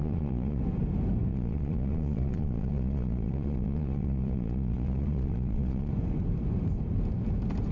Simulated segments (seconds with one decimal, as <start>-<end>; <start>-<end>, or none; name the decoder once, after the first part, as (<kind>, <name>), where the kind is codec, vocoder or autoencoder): 0.0-0.6 (vocoder, Vocos); 1.3-5.9

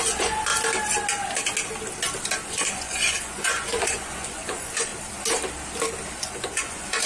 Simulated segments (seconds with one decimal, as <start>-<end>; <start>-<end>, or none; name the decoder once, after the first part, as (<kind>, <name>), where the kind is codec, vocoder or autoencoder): 0.0-0.5 (vocoder, Vocos); 2.5-4.9; 6.1-7.1